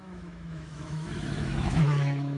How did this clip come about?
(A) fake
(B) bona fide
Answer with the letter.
A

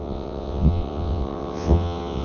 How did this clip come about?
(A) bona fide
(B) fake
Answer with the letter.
B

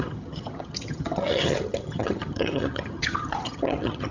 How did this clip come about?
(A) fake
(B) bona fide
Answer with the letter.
A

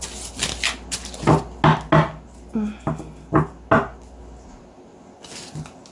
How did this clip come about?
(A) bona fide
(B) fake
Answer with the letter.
A